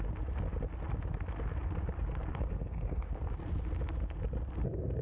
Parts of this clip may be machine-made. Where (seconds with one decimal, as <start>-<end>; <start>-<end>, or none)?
2.3-3.1